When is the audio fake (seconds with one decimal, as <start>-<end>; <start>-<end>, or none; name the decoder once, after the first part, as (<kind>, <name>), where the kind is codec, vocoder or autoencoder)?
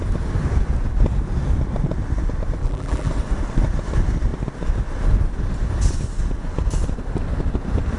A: 2.6-3.1 (vocoder, BigVGAN v2)